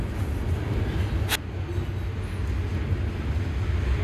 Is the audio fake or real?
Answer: real